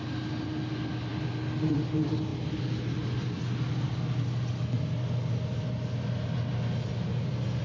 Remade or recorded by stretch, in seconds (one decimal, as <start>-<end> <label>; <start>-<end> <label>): 0.0-7.6 recorded